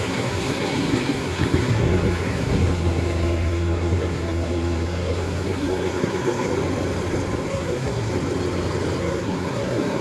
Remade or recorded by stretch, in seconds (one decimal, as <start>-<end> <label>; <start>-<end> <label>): 0.0-6.5 remade; 6.5-7.5 recorded; 7.5-8.1 remade; 8.1-9.0 recorded; 9.0-10.0 remade